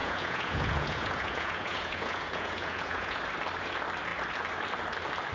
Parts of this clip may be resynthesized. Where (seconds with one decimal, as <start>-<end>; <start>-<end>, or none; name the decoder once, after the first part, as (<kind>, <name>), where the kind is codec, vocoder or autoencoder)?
0.0-3.2 (vocoder, Vocos)